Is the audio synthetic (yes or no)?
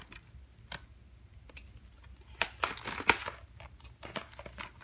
no